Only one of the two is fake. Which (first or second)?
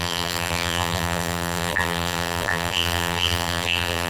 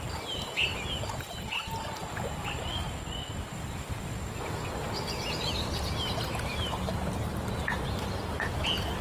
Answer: first